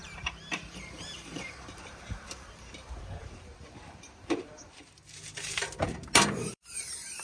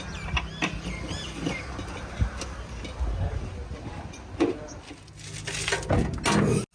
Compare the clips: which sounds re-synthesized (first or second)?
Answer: first